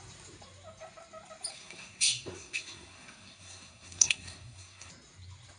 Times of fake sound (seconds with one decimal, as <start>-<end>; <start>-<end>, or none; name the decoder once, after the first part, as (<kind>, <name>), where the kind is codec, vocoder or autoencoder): 1.5-4.9 (codec, SNAC)